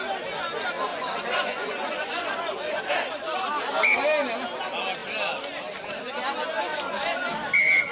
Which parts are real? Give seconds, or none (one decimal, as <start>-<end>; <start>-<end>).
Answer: 0.0-0.9; 2.8-6.7; 7.3-7.9